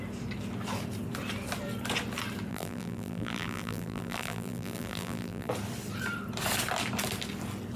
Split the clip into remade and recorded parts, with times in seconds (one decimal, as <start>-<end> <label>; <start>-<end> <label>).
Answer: 0.0-2.5 recorded; 2.5-5.5 remade; 5.5-7.8 recorded